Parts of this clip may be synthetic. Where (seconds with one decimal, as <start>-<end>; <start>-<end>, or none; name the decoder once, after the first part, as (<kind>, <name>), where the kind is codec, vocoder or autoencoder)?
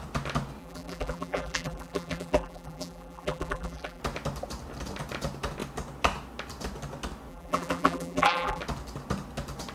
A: 0.6-4.0 (vocoder, BigVGAN v2); 7.3-8.6